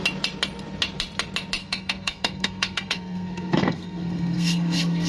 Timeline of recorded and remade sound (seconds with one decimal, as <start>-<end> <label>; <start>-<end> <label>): 0.0-1.6 recorded; 1.6-5.1 remade